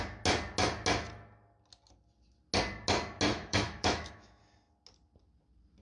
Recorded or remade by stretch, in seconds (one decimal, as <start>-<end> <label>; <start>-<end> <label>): 0.0-3.3 recorded; 3.3-4.4 remade; 4.4-5.8 recorded